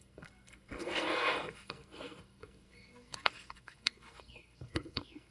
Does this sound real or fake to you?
fake